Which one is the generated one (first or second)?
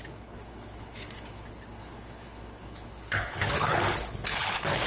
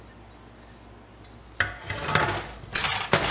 first